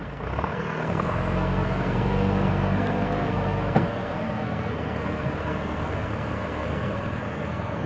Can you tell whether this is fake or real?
fake